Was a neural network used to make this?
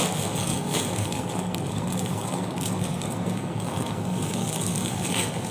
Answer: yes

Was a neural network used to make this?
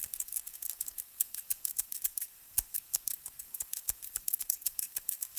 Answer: yes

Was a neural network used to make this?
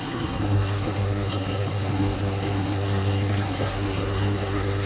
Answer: yes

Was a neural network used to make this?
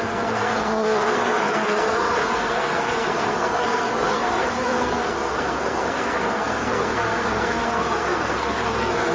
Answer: yes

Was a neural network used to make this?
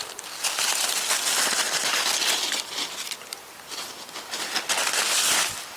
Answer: no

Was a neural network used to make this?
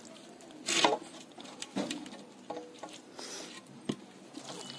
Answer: no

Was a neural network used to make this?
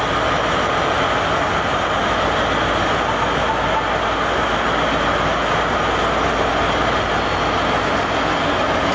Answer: no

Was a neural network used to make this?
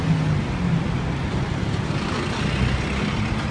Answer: no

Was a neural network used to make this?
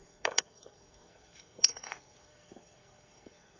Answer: yes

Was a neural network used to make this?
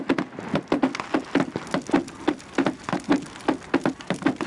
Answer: no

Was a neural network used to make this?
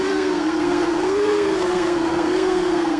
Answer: yes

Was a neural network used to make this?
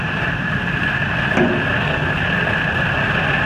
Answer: no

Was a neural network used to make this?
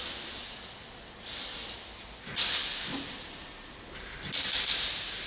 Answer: no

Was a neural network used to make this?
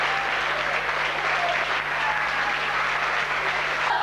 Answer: no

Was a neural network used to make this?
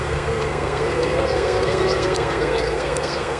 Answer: yes